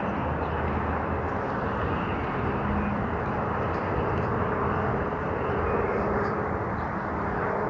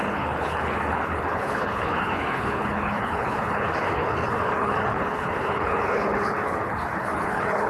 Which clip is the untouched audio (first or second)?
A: first